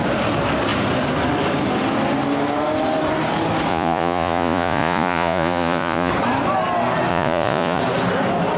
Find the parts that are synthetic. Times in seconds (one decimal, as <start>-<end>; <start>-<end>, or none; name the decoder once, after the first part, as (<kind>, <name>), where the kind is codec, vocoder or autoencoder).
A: 3.7-6.1 (vocoder, Vocos); 7.1-7.8